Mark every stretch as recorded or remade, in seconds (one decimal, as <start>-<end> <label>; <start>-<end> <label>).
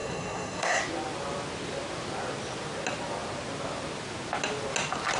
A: 0.0-0.8 remade; 0.8-5.2 recorded